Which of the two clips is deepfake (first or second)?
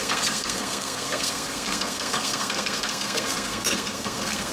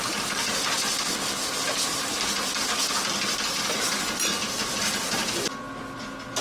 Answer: first